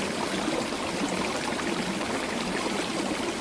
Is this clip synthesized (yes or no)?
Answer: no